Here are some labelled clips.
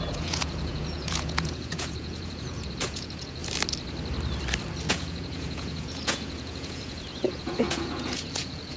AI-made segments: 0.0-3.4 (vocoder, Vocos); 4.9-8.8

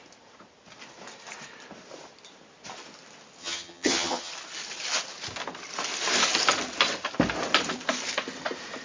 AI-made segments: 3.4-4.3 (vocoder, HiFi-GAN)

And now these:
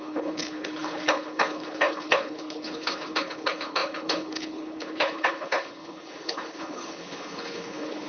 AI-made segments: 0.0-8.1 (codec, HILCodec)

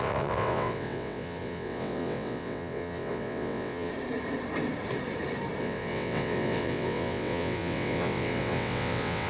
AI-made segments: 0.0-3.9 (vocoder, WaveNeXt); 5.6-9.3

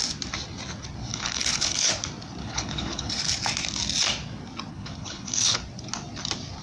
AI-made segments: 1.1-1.9 (codec, HILCodec); 2.4-3.3; 4.7-5.6

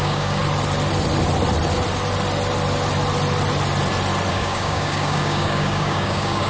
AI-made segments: 0.0-0.4 (codec, DAC); 4.3-6.5

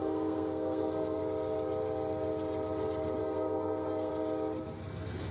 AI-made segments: 0.0-1.2 (codec, SNAC); 3.2-4.1